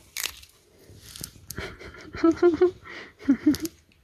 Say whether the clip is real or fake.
real